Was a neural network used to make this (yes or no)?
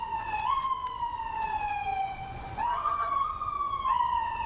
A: yes